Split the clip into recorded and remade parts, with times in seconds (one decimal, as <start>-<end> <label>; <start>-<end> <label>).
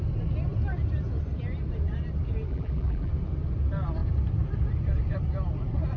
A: 0.0-2.5 recorded; 2.5-3.1 remade; 3.1-6.0 recorded